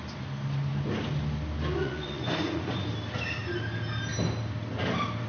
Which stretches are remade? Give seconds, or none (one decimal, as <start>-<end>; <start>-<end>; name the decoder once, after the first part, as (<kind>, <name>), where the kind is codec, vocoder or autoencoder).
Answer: 1.8-2.9 (vocoder, Vocos)

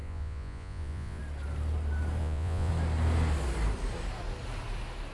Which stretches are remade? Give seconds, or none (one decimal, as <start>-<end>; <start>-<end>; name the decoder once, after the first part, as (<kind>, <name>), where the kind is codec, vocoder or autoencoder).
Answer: 0.0-1.2 (vocoder, Vocos); 2.2-2.7

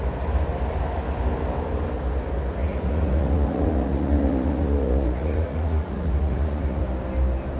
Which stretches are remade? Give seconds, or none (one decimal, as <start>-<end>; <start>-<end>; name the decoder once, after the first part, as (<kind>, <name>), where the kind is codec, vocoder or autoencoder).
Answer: 2.6-6.8 (vocoder, Vocos)

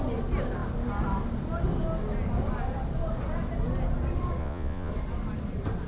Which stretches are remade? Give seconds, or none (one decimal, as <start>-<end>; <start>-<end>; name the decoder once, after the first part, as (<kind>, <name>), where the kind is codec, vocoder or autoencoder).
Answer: 4.4-4.9 (vocoder, Vocos)

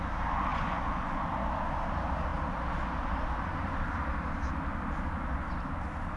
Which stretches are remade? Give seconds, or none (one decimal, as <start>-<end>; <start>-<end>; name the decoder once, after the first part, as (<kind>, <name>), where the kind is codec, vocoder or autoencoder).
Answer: 0.5-1.2 (vocoder, Vocos)